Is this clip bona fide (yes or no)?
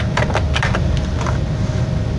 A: yes